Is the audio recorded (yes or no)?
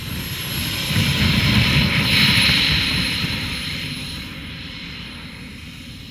no